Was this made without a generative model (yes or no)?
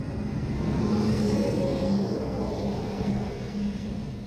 no